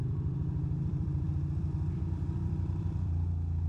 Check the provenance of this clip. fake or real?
fake